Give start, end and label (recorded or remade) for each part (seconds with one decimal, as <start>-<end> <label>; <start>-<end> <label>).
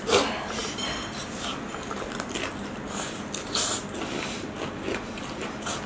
0.0-5.9 recorded